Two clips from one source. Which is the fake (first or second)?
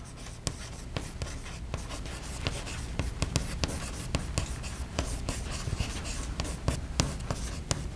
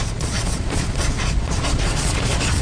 second